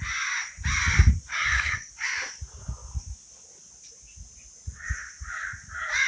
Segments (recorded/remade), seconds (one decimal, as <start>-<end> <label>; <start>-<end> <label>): 0.0-1.3 recorded; 1.3-1.9 remade; 1.9-6.1 recorded